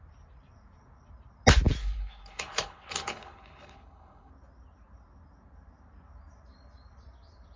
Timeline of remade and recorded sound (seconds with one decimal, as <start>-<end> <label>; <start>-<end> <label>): 0.0-1.8 recorded; 1.8-4.3 remade; 4.3-7.6 recorded